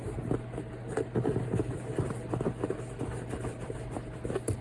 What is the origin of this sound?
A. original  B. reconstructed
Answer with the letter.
A